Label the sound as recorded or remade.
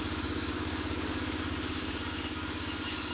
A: remade